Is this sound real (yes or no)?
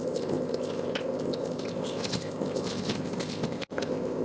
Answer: no